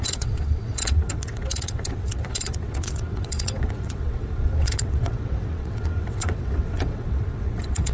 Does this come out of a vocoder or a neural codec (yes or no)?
yes